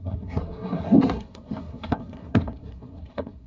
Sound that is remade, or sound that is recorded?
remade